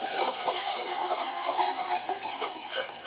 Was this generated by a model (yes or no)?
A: yes